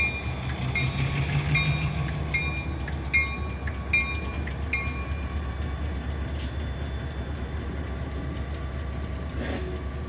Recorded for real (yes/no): yes